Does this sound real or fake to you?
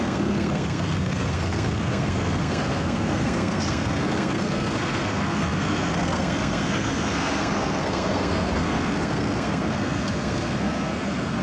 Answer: fake